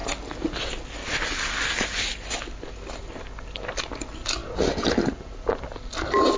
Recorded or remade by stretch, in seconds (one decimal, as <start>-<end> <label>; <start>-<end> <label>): 0.0-6.4 recorded